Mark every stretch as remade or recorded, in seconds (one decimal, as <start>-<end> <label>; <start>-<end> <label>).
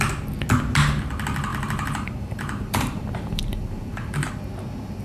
0.0-1.5 recorded; 1.5-4.3 remade; 4.3-5.0 recorded